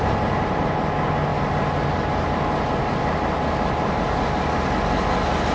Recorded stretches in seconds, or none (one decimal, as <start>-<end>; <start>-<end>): 0.0-5.5

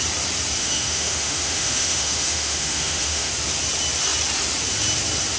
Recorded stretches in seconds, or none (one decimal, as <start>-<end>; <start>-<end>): 0.0-0.6; 3.3-5.4

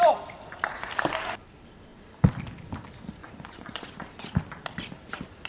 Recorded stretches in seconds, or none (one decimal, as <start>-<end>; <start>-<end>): 0.0-3.2; 3.9-5.5

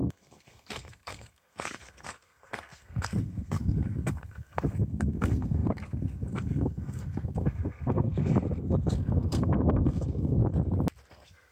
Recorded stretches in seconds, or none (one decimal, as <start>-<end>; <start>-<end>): 10.4-11.1

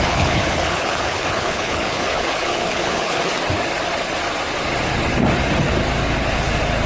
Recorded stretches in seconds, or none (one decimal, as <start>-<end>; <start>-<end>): 3.2-6.9

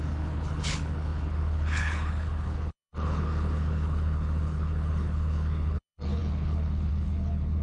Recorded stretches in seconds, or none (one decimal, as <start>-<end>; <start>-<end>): none

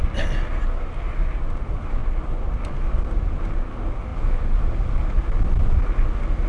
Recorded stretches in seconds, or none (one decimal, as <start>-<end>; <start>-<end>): 0.0-6.5

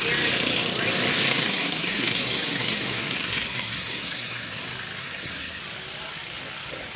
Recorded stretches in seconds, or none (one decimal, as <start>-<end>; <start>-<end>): 0.0-1.3; 4.6-5.0; 5.6-7.0